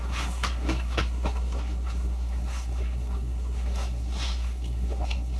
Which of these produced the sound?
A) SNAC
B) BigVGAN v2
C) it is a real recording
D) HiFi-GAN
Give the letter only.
A